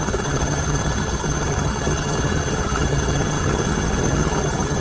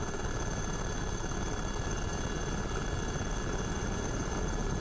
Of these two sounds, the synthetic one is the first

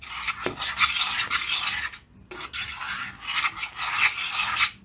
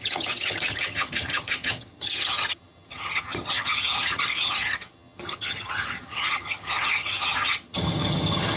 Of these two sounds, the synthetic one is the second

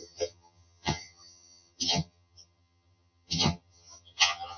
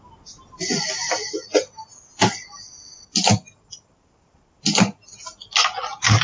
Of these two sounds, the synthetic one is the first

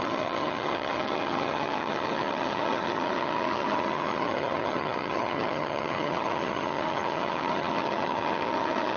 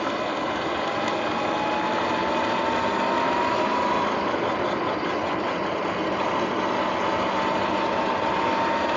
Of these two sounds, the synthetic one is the first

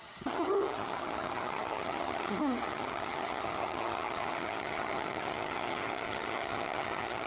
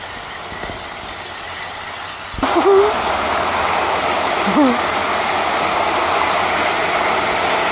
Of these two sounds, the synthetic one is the first